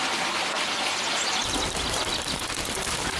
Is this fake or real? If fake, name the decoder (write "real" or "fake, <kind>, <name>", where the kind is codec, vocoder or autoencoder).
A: real